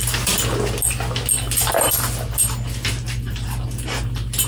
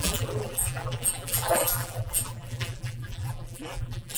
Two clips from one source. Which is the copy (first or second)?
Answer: second